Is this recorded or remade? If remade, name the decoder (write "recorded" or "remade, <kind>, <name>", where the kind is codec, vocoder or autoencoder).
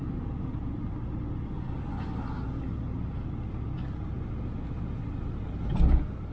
recorded